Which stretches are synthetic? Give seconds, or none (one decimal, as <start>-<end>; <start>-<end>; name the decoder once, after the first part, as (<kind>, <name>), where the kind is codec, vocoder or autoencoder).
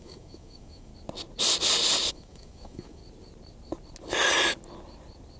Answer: 0.0-0.9 (autoencoder, DAC-VAE); 2.1-3.0